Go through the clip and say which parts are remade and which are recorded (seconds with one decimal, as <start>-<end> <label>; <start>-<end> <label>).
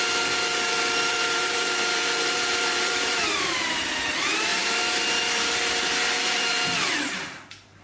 0.0-1.1 recorded; 1.1-4.1 remade; 4.1-7.8 recorded